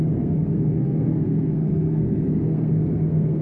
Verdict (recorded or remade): remade